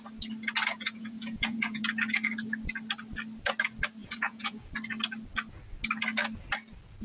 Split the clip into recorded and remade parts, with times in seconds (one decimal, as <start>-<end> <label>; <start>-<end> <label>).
0.0-0.7 recorded; 0.7-1.8 remade; 1.8-4.0 recorded; 4.0-4.7 remade; 4.7-7.0 recorded